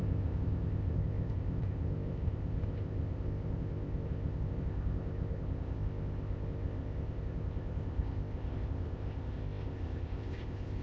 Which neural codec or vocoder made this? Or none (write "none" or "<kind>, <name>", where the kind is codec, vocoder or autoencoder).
codec, ZipCodec